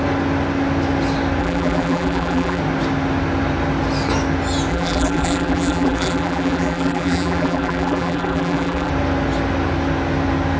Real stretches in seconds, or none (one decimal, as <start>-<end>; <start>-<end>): 0.0-1.4; 2.6-4.7; 8.9-10.6